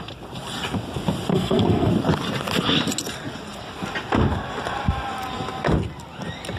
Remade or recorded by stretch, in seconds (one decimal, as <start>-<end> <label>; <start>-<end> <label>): 0.0-1.3 recorded; 1.3-1.9 remade; 1.9-6.6 recorded

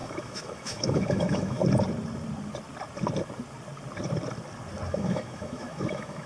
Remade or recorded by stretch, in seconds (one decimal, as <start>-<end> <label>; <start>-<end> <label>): 0.0-1.6 remade; 1.6-4.9 recorded; 4.9-6.3 remade

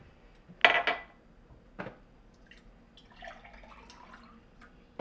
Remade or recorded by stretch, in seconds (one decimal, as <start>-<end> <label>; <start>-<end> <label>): 0.0-5.0 recorded

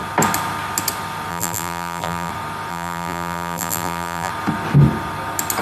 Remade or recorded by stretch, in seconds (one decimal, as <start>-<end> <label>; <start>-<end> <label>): 0.0-1.3 recorded; 1.3-2.3 remade; 2.3-2.7 recorded; 2.7-4.3 remade; 4.3-5.6 recorded

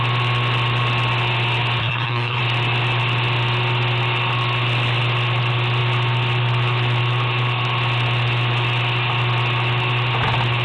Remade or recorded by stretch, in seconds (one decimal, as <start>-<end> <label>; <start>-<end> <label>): 0.0-1.8 recorded; 1.8-2.4 remade; 2.4-10.6 recorded

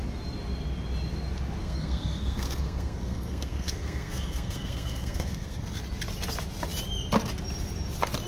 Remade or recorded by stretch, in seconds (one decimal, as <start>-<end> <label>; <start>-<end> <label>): 0.0-1.6 recorded; 1.6-5.8 remade; 5.8-8.3 recorded

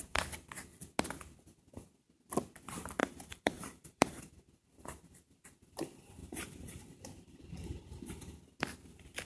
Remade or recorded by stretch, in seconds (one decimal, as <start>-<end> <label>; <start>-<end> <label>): 0.0-3.0 recorded; 3.0-4.2 remade; 4.2-6.2 recorded; 6.2-6.8 remade; 6.8-9.2 recorded

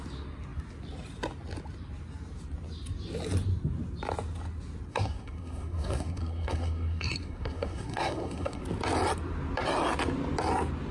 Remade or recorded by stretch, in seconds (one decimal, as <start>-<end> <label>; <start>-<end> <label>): 0.0-4.9 recorded; 4.9-8.6 remade; 8.6-10.9 recorded